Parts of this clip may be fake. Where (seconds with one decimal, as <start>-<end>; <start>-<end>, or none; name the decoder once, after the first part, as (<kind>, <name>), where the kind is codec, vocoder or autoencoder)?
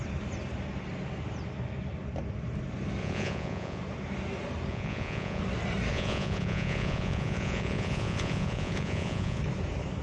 3.0-3.8 (vocoder, Vocos); 4.7-5.4; 5.9-9.4